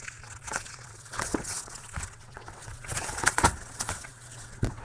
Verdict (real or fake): fake